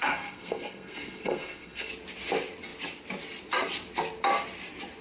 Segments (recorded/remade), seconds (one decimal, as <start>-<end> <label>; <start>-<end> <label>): 0.0-1.9 remade; 1.9-5.0 recorded